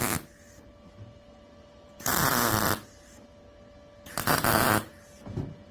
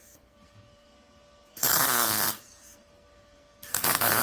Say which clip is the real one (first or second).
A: first